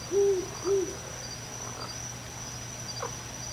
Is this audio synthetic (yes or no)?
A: no